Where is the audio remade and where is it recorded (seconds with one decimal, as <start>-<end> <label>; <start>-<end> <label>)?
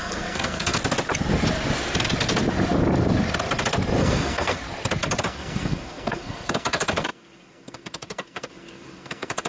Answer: 0.0-0.8 remade; 0.8-4.0 recorded; 4.0-4.6 remade; 4.6-5.2 recorded; 5.2-9.5 remade